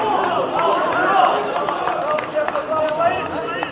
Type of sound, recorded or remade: remade